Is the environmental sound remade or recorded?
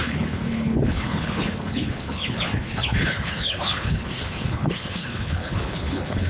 remade